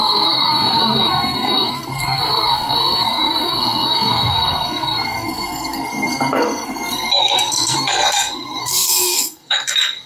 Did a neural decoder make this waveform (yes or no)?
yes